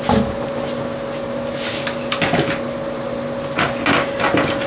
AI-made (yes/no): no